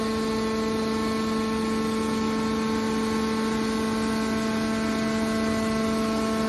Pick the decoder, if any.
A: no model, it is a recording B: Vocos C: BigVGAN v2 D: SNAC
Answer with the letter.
A